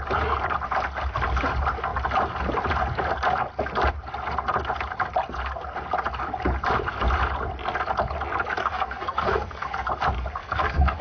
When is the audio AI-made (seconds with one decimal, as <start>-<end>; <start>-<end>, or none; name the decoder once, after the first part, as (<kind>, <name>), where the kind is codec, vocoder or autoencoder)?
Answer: 8.6-9.9 (codec, SNAC); 10.4-11.0